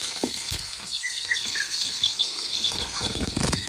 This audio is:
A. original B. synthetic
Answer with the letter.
B